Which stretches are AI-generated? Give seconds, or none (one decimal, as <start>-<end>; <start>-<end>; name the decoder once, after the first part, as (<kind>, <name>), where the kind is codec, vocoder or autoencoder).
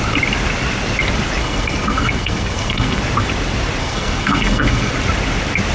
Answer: 1.4-3.0 (codec, SNAC); 3.8-4.9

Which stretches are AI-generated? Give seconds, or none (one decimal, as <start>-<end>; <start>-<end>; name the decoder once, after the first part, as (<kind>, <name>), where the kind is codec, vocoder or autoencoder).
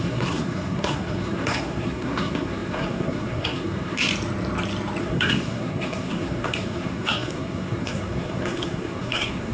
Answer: 0.0-4.1 (codec, SNAC); 5.0-9.5